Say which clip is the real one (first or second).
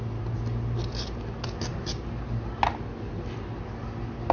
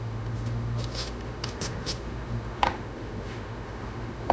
first